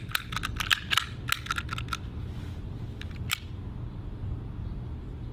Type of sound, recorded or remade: recorded